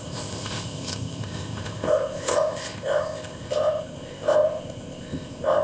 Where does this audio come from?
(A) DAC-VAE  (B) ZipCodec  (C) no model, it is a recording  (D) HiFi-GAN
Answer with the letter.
B